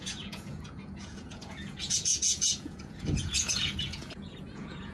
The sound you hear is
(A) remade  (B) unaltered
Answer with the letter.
A